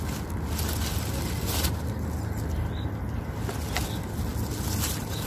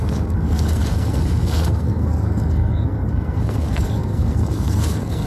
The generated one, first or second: second